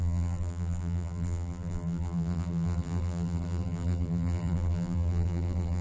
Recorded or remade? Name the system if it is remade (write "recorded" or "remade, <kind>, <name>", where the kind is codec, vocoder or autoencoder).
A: remade, vocoder, BigVGAN v2